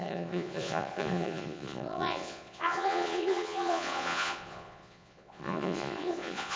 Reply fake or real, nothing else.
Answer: fake